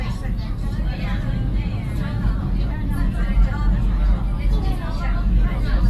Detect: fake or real real